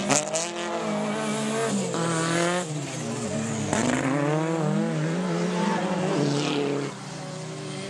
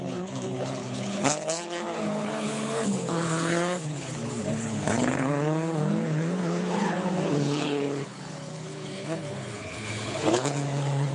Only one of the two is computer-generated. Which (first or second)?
second